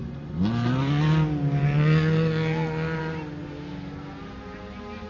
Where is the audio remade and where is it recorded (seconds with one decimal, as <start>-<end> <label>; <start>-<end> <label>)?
0.0-5.1 recorded